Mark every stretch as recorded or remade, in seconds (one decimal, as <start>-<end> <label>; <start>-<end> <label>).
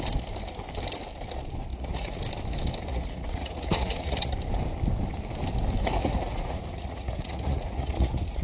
0.0-1.7 recorded; 1.7-2.2 remade; 2.2-2.9 recorded; 2.9-4.3 remade; 4.3-6.0 recorded; 6.0-8.4 remade